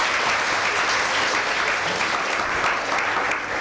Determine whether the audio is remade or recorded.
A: recorded